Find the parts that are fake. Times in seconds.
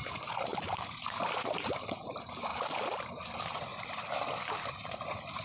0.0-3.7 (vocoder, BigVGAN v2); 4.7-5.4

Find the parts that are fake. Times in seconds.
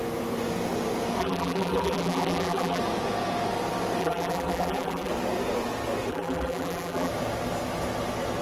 1.2-2.8 (vocoder, BigVGAN v2); 4.0-5.1; 6.1-7.1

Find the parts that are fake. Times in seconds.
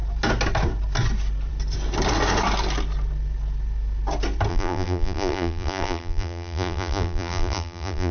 4.5-8.1 (vocoder, BigVGAN v2)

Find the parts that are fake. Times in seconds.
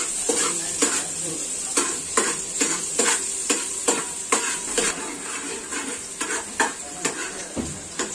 0.0-5.7 (vocoder, BigVGAN v2); 6.6-8.1